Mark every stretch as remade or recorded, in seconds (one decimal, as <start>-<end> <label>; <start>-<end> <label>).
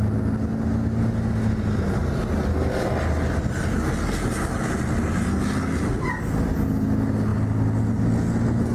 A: 0.0-8.7 recorded